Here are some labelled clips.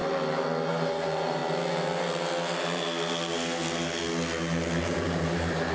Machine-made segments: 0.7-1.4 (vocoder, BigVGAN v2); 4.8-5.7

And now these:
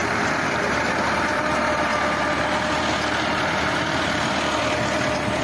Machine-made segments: 0.7-1.9 (vocoder, BigVGAN v2)

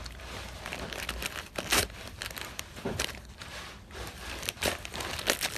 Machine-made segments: 1.7-5.1 (vocoder, BigVGAN v2)